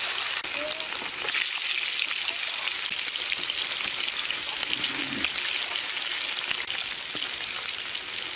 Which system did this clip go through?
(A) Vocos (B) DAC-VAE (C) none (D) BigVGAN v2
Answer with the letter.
C